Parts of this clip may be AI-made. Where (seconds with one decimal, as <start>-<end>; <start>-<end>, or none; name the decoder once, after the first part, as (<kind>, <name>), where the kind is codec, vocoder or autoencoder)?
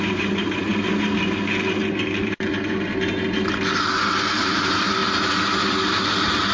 0.0-0.7 (vocoder, BigVGAN v2); 1.9-2.5; 4.2-5.0; 5.9-6.5